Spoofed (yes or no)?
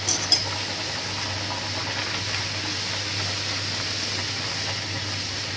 no